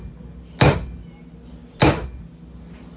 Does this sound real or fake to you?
real